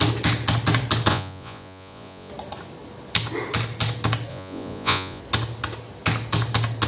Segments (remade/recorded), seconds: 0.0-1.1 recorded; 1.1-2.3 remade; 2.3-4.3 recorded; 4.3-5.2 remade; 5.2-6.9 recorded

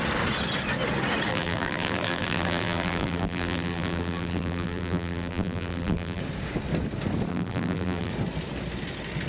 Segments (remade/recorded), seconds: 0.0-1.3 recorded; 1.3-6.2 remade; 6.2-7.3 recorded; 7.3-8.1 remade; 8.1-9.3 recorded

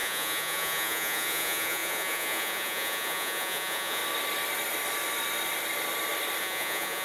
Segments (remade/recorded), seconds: 0.0-4.0 remade; 4.0-6.4 recorded; 6.4-7.0 remade

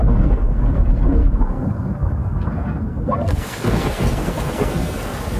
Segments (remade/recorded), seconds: 0.0-5.4 remade

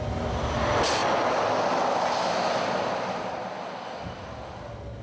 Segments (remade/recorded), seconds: 0.0-5.0 recorded

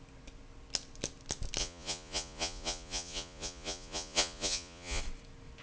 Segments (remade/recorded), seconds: 0.0-1.6 recorded; 1.6-5.0 remade; 5.0-5.6 recorded

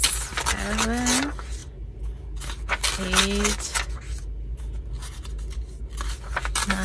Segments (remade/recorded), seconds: 0.0-6.8 recorded

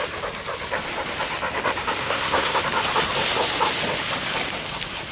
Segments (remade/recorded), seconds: 0.0-2.0 recorded; 2.0-2.6 remade; 2.6-5.1 recorded